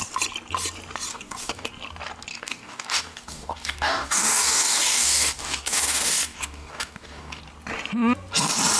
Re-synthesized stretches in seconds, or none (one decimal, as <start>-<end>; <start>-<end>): 1.1-1.7; 2.3-7.4